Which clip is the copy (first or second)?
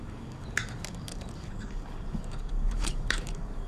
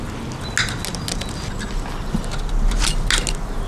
first